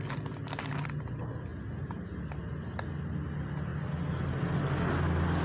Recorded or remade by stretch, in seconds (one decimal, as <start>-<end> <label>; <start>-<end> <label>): 0.0-5.4 recorded